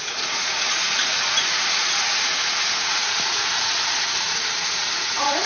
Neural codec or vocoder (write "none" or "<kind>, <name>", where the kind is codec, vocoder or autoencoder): vocoder, Vocos